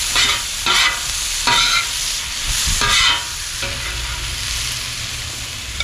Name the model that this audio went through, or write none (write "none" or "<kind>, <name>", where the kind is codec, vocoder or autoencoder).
vocoder, BigVGAN v2